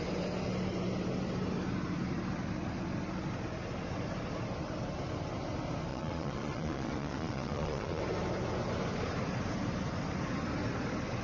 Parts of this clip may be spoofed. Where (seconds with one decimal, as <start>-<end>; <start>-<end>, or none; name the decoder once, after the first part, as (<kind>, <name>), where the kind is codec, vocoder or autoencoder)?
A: 5.9-8.0 (vocoder, Vocos)